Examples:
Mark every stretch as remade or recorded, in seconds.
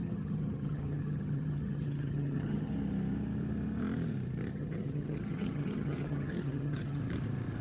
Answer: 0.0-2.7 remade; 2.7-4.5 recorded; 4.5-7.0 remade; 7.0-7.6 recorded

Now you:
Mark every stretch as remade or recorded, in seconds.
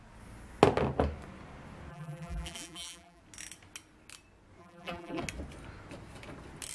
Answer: 0.0-1.9 recorded; 1.9-3.2 remade; 3.2-4.6 recorded; 4.6-5.2 remade; 5.2-6.7 recorded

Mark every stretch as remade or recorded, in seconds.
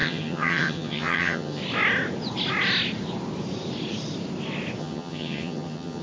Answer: 0.0-1.6 remade; 1.6-4.8 recorded; 4.8-6.0 remade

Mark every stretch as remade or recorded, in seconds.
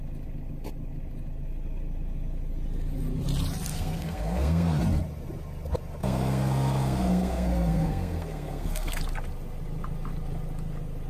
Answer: 0.0-3.7 recorded; 3.7-4.8 remade; 4.8-6.0 recorded; 6.0-9.0 remade; 9.0-11.1 recorded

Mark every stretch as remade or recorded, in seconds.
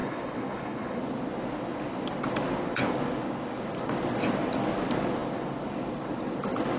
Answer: 0.0-1.0 remade; 1.0-6.8 recorded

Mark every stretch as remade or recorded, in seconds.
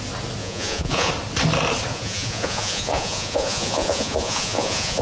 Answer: 0.0-0.4 recorded; 0.4-1.1 remade; 1.1-1.9 recorded; 1.9-5.0 remade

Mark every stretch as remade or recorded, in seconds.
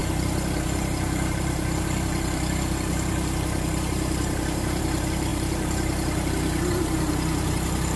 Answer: 0.0-8.0 remade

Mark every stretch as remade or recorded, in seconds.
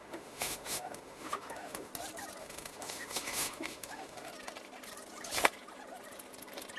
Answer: 0.0-1.9 remade; 1.9-2.4 recorded; 2.4-4.3 remade; 4.3-6.8 recorded